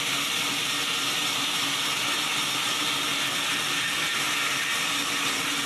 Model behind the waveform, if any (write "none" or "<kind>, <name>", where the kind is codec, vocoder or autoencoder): none